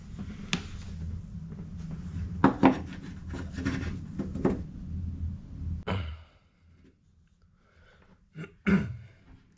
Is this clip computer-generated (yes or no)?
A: no